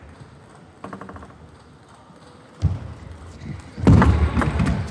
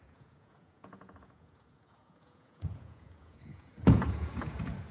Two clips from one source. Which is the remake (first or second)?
second